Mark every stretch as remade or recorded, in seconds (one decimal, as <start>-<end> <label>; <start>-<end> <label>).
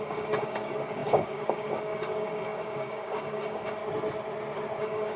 0.0-3.8 remade; 3.8-4.8 recorded; 4.8-5.2 remade